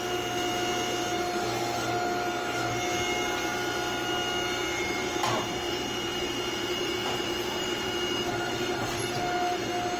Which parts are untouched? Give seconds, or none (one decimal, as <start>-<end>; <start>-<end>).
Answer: 0.0-4.7; 8.0-10.0